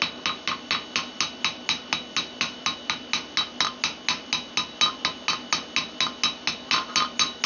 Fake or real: real